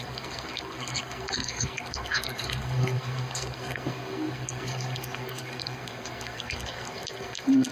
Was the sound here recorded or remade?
remade